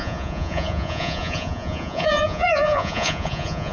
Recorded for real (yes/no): no